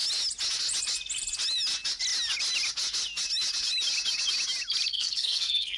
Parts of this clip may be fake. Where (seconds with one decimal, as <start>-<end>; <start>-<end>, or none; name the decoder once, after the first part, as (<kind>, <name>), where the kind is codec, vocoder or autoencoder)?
4.9-5.8 (codec, SNAC)